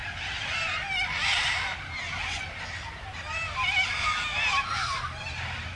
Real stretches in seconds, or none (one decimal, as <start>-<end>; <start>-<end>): 2.0-4.7